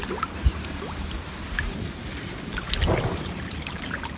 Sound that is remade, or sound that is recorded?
recorded